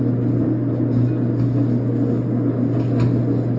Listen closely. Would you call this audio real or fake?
real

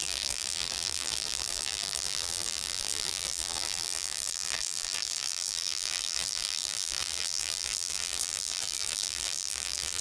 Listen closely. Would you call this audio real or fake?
fake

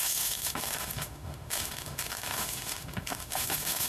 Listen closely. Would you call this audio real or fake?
fake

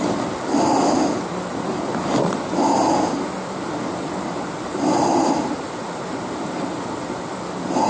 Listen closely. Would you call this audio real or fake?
real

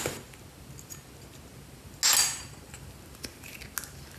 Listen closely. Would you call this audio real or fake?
real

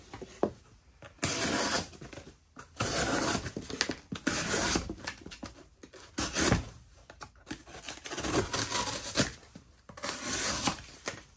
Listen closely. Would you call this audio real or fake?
real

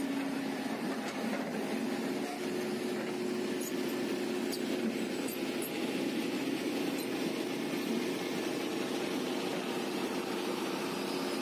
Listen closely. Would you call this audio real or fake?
real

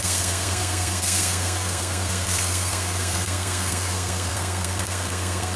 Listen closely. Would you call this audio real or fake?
fake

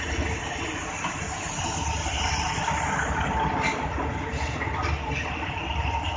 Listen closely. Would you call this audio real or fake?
real